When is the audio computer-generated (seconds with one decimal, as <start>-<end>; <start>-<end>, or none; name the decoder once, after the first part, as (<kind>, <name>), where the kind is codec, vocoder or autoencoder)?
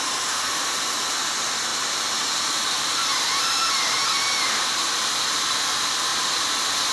1.7-2.9 (vocoder, BigVGAN v2)